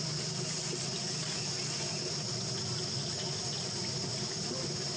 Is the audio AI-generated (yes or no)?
no